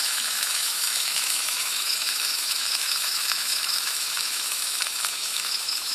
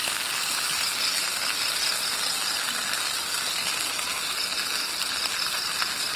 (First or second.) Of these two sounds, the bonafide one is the second